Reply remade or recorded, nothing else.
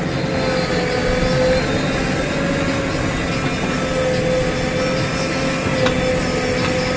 recorded